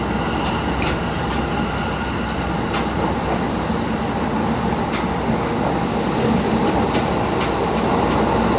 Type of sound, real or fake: real